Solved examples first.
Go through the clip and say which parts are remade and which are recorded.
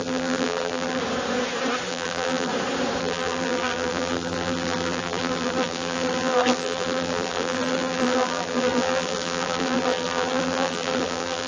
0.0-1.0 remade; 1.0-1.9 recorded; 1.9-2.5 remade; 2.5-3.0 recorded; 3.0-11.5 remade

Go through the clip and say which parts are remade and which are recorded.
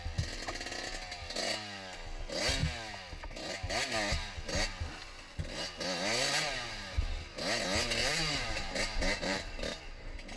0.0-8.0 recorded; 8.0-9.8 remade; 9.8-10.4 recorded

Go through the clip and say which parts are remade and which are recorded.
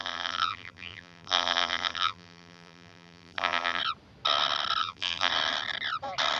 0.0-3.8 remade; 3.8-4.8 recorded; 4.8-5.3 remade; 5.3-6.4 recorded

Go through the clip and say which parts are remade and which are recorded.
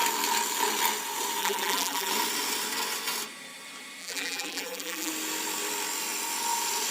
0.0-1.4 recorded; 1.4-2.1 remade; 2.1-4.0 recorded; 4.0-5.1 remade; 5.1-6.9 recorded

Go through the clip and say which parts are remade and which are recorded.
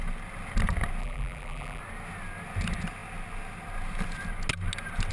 0.0-1.0 recorded; 1.0-1.8 remade; 1.8-5.1 recorded